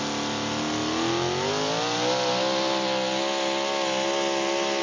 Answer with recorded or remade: recorded